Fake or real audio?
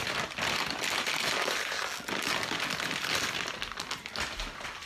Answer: real